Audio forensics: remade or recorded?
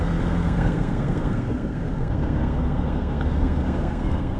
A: remade